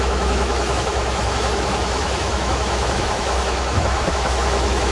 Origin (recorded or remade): remade